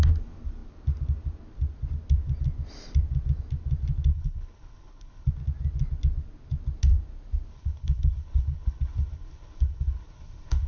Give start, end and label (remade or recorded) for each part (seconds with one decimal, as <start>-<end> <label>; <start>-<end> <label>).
0.0-4.1 recorded; 4.1-5.3 remade; 5.3-7.5 recorded; 7.5-10.7 remade